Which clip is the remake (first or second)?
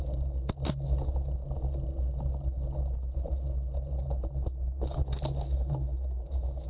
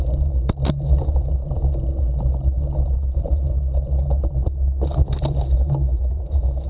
second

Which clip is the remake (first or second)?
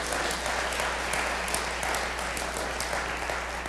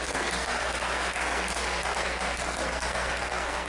second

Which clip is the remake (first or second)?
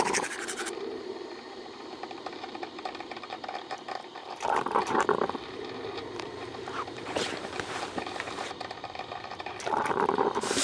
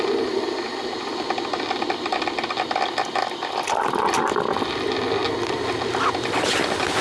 first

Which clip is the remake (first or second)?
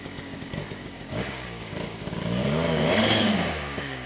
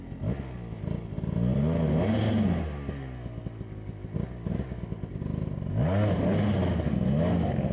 first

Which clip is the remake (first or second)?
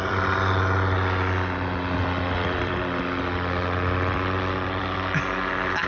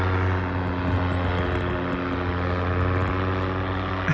first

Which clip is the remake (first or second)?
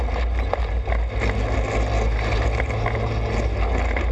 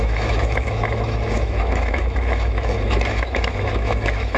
second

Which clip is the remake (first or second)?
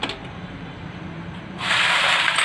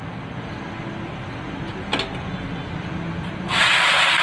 first